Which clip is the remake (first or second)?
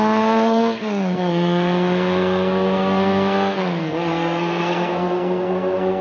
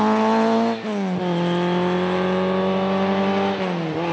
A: first